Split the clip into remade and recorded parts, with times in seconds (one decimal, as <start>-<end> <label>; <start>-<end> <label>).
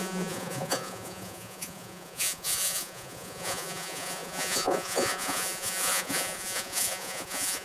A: 0.0-7.6 remade